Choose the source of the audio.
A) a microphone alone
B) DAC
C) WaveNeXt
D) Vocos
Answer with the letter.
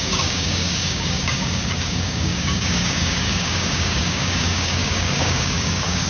B